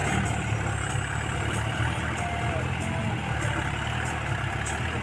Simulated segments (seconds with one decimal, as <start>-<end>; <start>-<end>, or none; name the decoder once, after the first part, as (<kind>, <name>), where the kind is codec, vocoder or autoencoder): none